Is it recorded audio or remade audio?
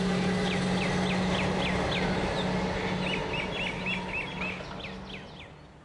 recorded